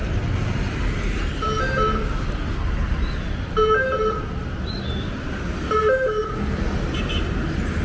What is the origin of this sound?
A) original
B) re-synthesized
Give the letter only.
A